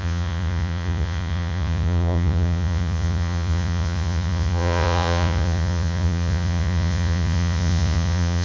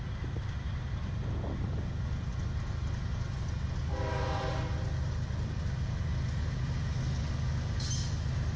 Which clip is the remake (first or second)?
first